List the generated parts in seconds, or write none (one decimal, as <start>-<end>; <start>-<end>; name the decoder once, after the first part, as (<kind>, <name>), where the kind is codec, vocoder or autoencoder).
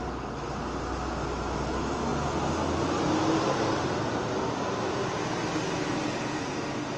none